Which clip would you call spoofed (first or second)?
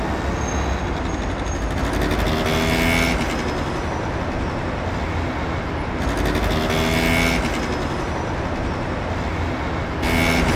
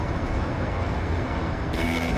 second